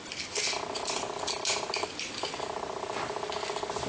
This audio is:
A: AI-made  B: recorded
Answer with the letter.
B